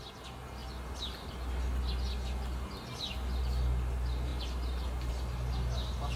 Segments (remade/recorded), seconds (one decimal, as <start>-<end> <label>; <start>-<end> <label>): 0.0-6.2 recorded